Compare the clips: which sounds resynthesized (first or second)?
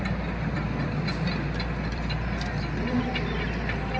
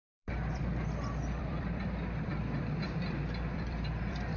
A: second